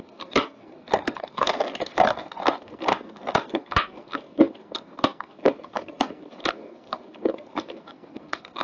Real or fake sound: fake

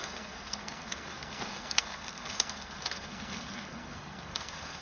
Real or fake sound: fake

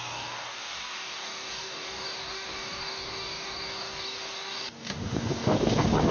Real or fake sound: fake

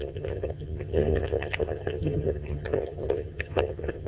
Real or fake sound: fake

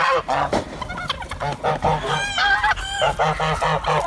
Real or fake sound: real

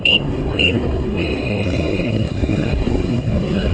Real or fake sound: fake